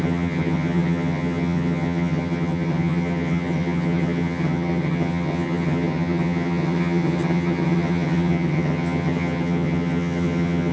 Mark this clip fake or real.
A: fake